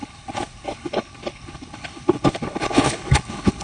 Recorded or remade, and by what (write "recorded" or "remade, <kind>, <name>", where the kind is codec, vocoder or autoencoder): remade, codec, HILCodec